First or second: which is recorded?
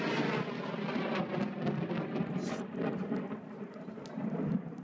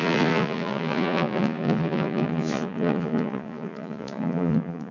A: first